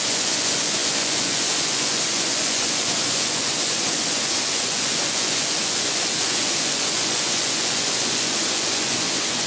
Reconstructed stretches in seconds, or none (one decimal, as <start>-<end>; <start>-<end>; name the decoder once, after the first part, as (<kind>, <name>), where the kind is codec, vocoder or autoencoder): 0.0-9.5 (vocoder, Vocos)